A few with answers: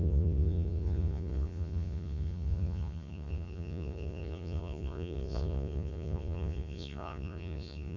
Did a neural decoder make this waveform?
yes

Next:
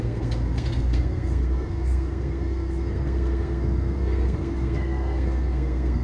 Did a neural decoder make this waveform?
yes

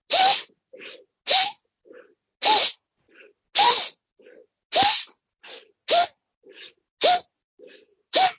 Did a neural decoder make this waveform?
no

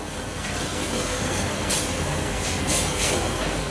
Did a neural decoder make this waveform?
yes